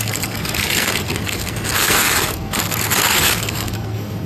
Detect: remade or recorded remade